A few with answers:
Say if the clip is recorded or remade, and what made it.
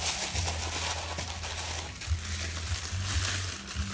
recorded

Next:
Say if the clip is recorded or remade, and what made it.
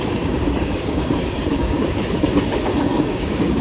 remade, codec, DAC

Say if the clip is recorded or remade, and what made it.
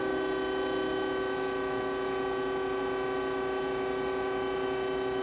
recorded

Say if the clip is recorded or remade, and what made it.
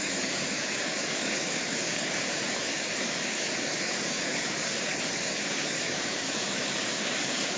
remade, codec, DAC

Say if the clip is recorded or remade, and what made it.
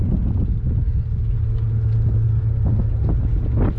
recorded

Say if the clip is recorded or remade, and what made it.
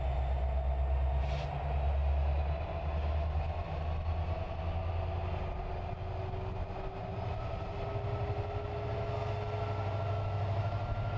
recorded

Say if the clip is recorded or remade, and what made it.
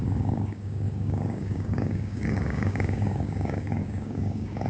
remade, codec, DAC